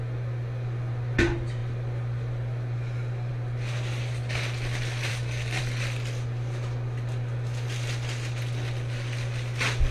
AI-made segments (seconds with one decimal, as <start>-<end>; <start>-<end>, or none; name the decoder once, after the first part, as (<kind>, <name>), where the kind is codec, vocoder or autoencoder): 5.1-5.6 (codec, SNAC)